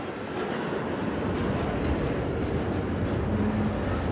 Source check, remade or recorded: recorded